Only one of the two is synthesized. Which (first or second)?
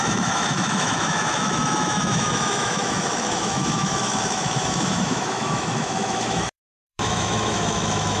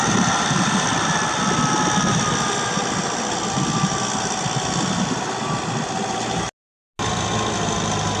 first